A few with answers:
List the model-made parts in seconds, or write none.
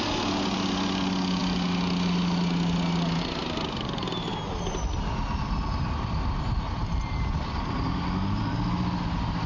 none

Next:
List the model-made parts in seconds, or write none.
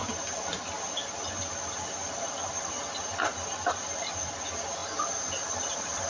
none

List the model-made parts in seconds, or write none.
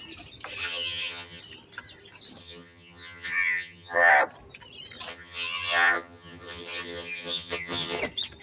0.6-1.4 (vocoder, HiFi-GAN); 2.4-4.1; 5.1-8.0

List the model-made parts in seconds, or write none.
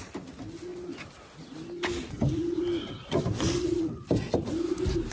none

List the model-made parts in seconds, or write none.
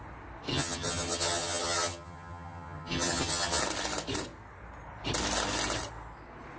0.5-3.6 (vocoder, HiFi-GAN)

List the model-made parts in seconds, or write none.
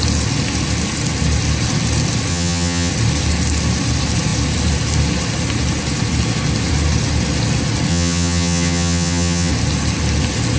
2.3-2.9 (vocoder, HiFi-GAN); 7.9-9.5